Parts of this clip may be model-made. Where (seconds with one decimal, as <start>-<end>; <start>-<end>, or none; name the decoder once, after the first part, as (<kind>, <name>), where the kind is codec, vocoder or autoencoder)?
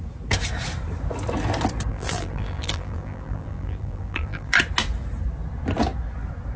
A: 1.9-4.5 (vocoder, BigVGAN v2)